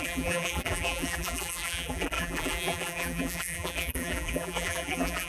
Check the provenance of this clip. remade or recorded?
remade